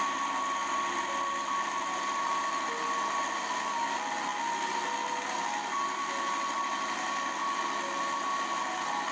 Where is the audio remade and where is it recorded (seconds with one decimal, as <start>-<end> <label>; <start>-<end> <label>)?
0.0-9.1 recorded